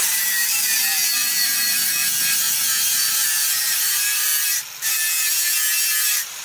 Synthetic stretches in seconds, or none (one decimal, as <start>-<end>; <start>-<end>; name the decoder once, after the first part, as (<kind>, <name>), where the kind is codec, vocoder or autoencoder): 0.0-4.3 (vocoder, BigVGAN v2); 6.0-6.4